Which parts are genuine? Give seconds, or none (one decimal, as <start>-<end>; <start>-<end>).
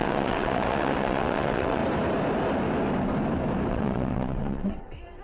1.8-3.7